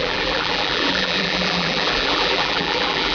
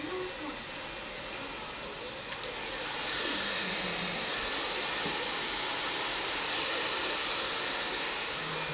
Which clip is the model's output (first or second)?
first